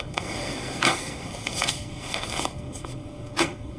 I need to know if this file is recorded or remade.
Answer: remade